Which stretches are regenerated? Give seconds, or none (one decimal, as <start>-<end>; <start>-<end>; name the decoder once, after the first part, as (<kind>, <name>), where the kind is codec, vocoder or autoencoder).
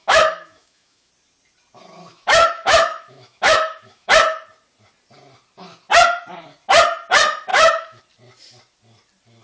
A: 0.0-1.1 (autoencoder, DAC-VAE); 2.1-4.1; 7.5-8.0